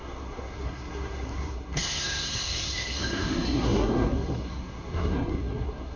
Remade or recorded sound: remade